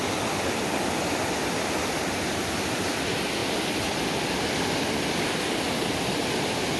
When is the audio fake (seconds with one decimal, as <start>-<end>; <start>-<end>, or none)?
none